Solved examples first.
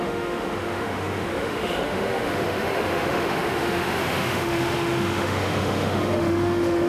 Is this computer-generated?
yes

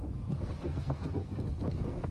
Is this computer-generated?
yes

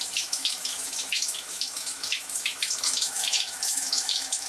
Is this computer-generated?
yes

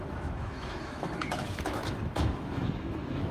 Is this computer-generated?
yes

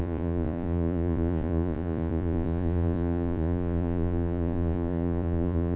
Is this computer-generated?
yes